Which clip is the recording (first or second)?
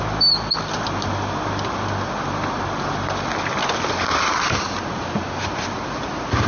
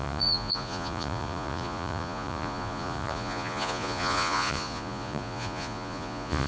first